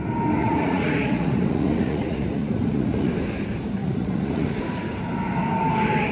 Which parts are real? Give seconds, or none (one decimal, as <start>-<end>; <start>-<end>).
0.0-0.4; 3.1-3.8; 4.6-6.1